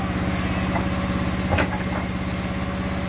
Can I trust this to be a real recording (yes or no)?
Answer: yes